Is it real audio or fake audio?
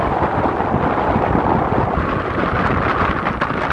real